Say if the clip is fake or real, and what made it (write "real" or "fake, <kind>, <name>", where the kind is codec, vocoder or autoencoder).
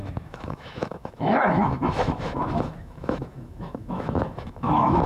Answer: fake, autoencoder, DAC-VAE